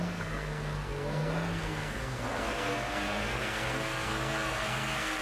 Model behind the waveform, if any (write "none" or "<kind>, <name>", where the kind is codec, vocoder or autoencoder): codec, SNAC